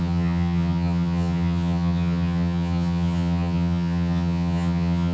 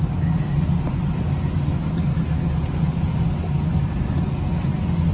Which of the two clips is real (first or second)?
second